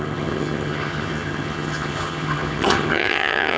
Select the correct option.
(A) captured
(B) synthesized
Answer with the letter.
B